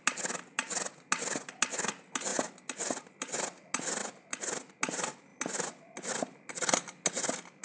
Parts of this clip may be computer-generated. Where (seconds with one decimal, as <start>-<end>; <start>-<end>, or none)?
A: none